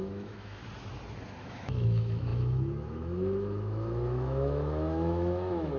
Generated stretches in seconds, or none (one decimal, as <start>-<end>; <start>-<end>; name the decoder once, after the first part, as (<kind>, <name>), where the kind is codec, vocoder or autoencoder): 0.0-0.6 (autoencoder, DAC-VAE); 1.4-5.8